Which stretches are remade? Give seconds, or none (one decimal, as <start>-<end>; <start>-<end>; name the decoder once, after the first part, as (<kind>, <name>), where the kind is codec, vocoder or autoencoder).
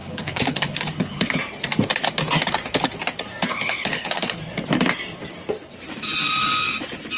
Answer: 0.0-1.4 (codec, HILCodec); 3.5-4.4